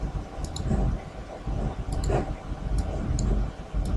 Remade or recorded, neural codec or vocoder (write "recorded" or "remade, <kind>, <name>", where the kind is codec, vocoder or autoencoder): recorded